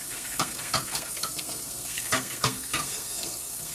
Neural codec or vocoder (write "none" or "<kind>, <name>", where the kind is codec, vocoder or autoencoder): codec, SNAC